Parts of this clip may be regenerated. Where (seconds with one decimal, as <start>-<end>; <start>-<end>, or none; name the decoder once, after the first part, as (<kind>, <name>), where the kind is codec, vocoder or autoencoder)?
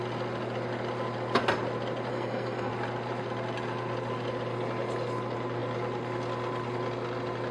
2.1-2.7 (codec, SNAC)